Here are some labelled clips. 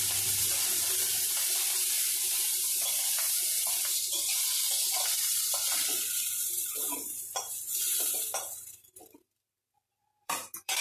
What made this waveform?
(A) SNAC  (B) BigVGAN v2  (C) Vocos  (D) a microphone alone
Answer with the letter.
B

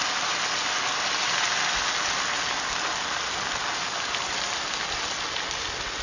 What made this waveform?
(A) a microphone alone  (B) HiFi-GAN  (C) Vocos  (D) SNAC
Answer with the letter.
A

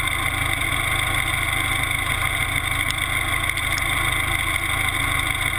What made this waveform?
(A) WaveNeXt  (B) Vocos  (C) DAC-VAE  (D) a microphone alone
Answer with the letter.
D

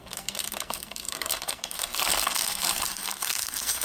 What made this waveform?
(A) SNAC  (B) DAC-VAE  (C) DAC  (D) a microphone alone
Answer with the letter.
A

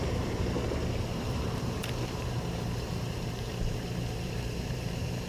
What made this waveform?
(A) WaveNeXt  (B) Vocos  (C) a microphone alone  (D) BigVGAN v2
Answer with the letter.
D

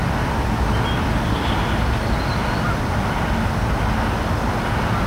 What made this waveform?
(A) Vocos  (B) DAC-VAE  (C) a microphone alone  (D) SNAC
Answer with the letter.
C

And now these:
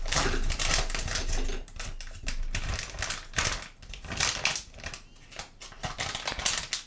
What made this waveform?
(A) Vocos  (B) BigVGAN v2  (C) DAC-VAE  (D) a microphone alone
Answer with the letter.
D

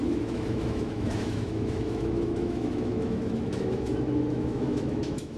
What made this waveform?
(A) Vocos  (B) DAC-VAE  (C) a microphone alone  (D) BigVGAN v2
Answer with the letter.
B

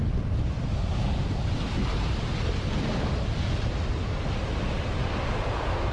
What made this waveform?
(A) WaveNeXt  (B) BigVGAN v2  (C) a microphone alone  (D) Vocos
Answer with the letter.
C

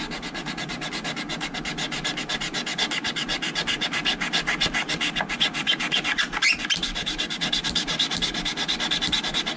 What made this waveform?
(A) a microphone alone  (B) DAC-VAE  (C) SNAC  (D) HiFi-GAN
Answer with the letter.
A